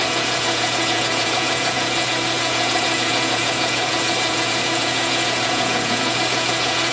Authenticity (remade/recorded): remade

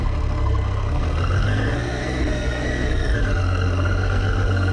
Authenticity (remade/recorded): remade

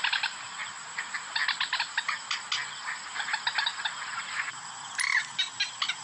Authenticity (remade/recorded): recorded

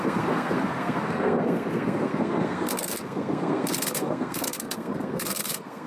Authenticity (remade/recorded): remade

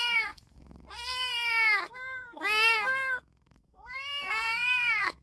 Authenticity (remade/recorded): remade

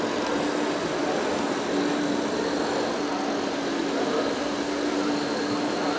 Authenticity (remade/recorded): recorded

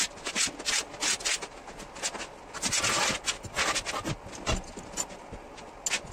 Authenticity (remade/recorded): recorded